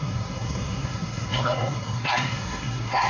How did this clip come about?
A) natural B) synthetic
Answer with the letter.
B